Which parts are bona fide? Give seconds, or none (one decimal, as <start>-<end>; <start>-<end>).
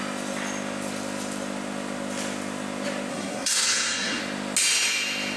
0.0-3.1; 4.2-5.4